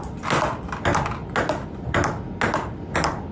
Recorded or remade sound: recorded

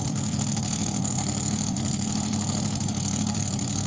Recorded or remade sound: remade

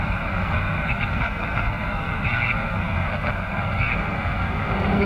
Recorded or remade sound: remade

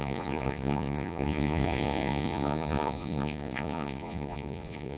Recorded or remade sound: remade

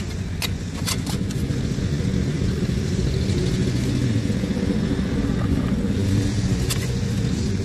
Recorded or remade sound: remade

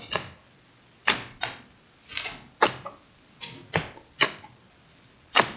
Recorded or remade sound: recorded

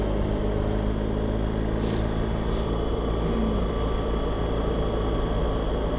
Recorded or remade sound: recorded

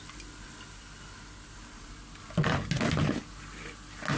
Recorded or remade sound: recorded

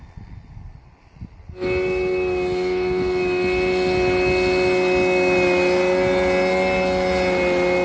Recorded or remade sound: recorded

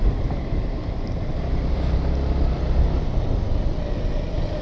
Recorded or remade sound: recorded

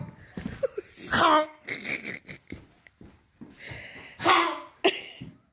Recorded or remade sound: recorded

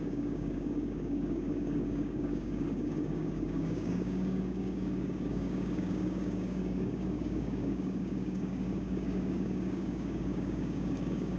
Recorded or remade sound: remade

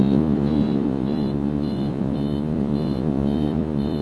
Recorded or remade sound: remade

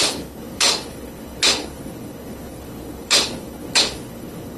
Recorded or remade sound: remade